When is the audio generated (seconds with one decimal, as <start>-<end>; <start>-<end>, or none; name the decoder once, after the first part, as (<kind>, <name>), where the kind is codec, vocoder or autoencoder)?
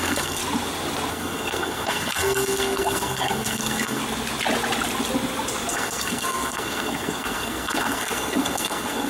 0.0-0.4 (codec, SNAC); 1.1-4.0; 5.7-9.1